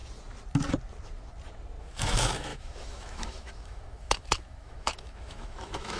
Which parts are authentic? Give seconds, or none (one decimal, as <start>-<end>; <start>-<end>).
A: 0.0-1.8